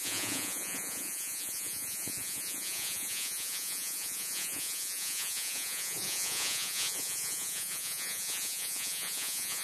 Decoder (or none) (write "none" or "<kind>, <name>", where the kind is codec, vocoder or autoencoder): vocoder, Vocos